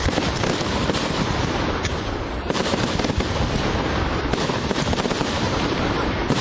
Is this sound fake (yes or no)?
yes